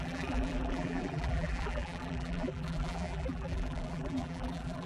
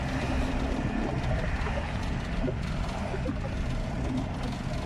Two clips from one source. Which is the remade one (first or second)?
first